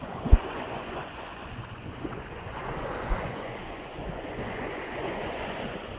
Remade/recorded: remade